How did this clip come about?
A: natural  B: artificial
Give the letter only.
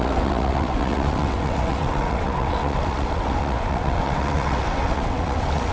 B